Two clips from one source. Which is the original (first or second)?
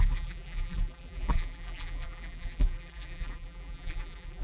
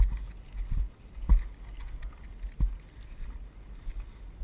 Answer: second